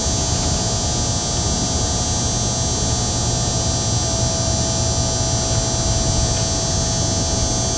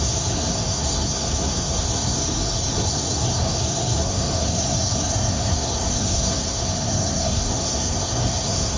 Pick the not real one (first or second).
second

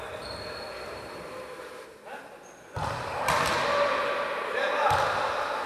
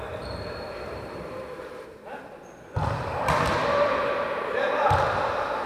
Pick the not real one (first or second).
second